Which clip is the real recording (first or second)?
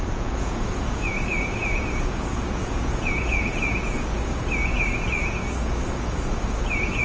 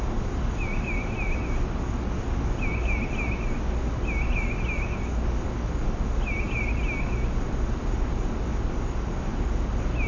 second